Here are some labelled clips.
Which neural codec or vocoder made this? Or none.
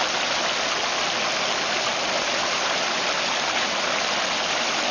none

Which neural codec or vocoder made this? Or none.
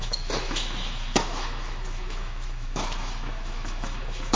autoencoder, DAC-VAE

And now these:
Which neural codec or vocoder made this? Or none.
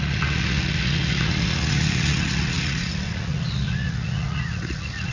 vocoder, Vocos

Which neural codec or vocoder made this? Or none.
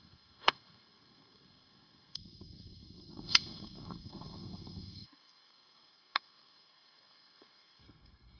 codec, SNAC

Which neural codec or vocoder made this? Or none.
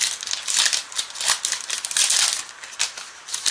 none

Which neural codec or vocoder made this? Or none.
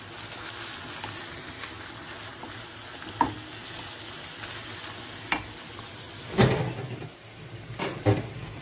none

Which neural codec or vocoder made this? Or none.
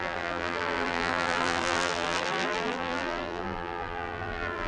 vocoder, BigVGAN v2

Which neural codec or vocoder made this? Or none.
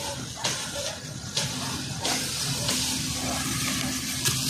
none